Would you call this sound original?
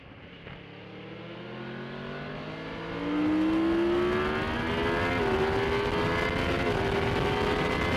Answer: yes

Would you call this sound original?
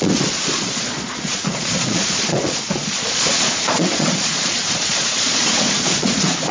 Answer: no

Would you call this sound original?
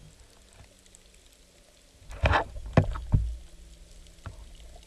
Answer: yes